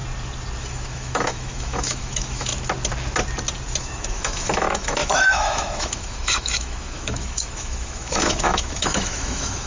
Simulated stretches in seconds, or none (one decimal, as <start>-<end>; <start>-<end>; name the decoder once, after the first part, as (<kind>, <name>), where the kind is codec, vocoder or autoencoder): 0.6-2.5 (autoencoder, DAC-VAE); 3.8-9.7